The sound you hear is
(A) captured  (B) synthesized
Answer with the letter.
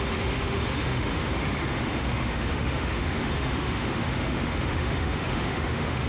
B